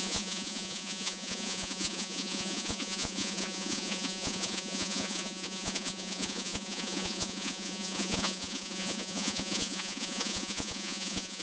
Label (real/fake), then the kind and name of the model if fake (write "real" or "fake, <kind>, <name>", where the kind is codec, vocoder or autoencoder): fake, vocoder, Vocos